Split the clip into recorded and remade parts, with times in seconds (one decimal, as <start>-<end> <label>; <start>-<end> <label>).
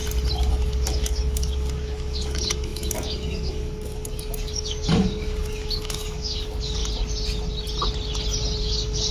0.0-0.5 recorded; 0.5-6.8 remade; 6.8-8.6 recorded; 8.6-9.1 remade